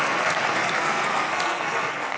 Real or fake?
fake